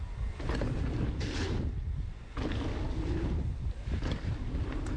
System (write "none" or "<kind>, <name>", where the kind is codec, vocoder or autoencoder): none